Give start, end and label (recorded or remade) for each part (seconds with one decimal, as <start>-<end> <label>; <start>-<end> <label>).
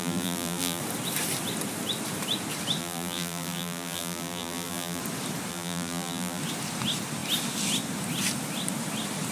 0.0-0.8 remade; 0.8-2.8 recorded; 2.8-5.0 remade; 5.0-5.5 recorded; 5.5-6.4 remade; 6.4-9.3 recorded